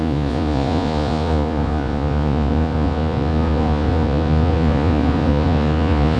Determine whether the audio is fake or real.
fake